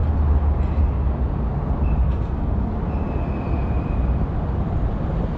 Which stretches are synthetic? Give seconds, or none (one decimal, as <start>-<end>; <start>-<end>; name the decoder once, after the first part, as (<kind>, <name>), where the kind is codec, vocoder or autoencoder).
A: 2.0-2.7 (codec, SNAC)